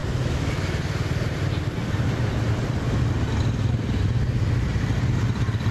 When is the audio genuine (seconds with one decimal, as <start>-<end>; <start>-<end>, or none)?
0.0-5.7